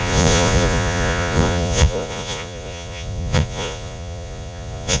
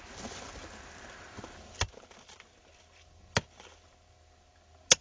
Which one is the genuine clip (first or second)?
second